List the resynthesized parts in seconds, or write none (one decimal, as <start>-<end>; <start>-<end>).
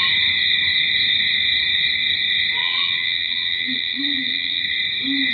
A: 2.6-4.6